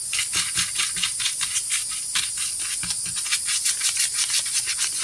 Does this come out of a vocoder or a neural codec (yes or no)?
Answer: no